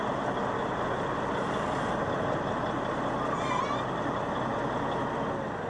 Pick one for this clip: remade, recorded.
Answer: recorded